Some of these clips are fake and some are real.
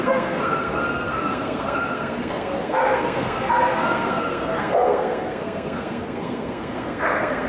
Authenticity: fake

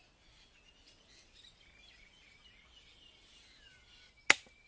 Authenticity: real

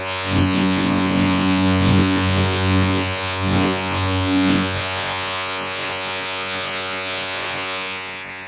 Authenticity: fake